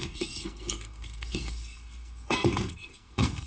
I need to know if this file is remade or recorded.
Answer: remade